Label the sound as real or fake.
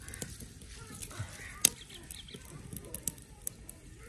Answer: real